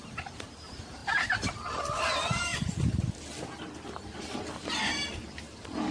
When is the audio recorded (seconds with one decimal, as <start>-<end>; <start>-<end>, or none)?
1.0-2.1; 2.5-3.9